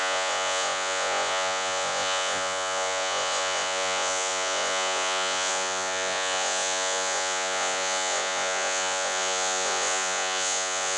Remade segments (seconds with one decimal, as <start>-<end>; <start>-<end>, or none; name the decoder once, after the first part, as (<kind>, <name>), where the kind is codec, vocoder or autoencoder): 0.0-11.0 (vocoder, Vocos)